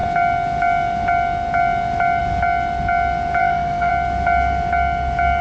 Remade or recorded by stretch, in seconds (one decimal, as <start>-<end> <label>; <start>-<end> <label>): 0.0-3.4 recorded; 3.4-3.9 remade; 3.9-5.4 recorded